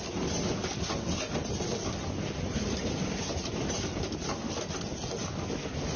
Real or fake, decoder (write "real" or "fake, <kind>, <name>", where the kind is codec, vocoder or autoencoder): real